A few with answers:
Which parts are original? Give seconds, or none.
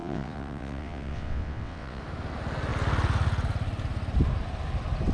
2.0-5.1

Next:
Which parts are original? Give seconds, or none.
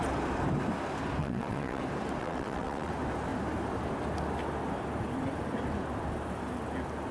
0.0-1.2; 1.8-2.2; 2.9-7.1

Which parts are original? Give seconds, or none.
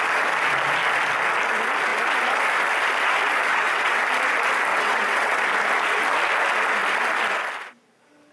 0.0-3.5; 4.0-4.7; 5.4-8.3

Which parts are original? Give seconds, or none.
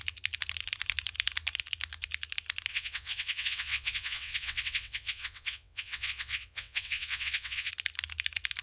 0.0-2.7; 7.7-8.6